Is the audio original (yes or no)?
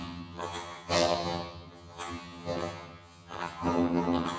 no